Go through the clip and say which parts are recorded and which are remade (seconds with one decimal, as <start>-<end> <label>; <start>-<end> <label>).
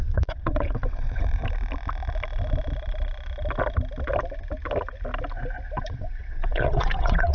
0.0-1.4 remade; 1.4-5.8 recorded; 5.8-7.3 remade